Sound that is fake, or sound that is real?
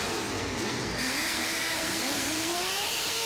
fake